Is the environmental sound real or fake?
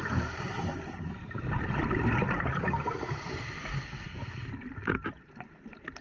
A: real